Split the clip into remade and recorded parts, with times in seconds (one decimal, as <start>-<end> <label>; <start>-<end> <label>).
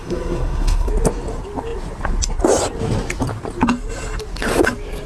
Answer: 0.0-0.9 remade; 0.9-5.1 recorded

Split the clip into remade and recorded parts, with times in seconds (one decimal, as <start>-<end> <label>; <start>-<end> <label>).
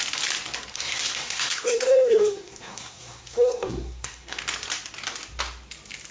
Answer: 0.0-0.7 recorded; 0.7-4.4 remade; 4.4-6.1 recorded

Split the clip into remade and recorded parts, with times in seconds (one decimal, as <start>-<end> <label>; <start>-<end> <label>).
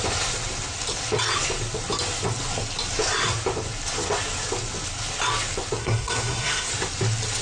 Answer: 0.0-5.8 recorded; 5.8-6.7 remade; 6.7-7.4 recorded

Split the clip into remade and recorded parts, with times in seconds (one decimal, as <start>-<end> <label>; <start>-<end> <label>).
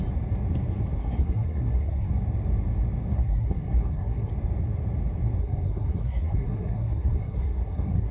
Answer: 0.0-1.0 recorded; 1.0-2.1 remade; 2.1-3.1 recorded; 3.1-4.3 remade; 4.3-5.4 recorded; 5.4-8.1 remade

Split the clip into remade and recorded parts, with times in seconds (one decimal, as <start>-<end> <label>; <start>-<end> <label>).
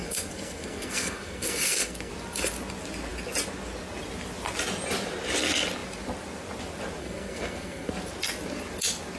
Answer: 0.0-2.1 remade; 2.1-7.0 recorded; 7.0-7.9 remade; 7.9-9.2 recorded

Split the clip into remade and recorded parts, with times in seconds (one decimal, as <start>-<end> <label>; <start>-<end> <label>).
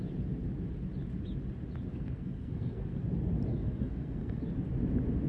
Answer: 0.0-1.9 recorded; 1.9-3.0 remade; 3.0-3.5 recorded; 3.5-4.4 remade; 4.4-5.3 recorded